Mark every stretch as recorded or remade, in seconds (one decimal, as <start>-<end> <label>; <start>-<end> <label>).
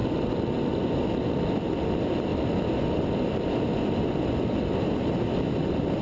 0.0-6.0 recorded